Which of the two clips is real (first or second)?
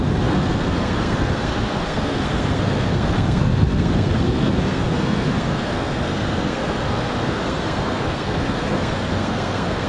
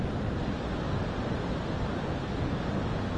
second